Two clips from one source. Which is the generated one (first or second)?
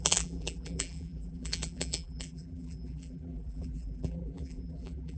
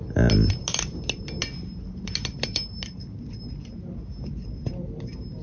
first